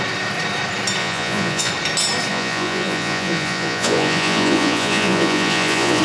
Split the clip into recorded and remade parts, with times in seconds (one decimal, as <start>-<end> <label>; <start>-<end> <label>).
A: 0.0-1.0 recorded; 1.0-1.7 remade; 1.7-2.3 recorded; 2.3-6.0 remade